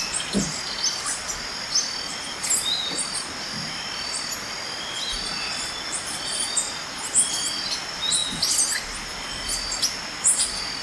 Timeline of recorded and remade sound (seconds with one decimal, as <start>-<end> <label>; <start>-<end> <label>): 0.0-10.8 recorded